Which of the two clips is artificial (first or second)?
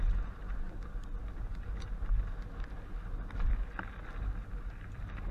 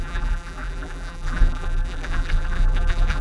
second